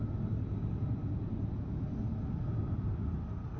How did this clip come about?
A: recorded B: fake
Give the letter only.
A